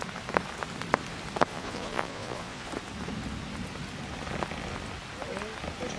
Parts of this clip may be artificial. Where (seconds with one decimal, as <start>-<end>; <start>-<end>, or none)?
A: 1.5-2.7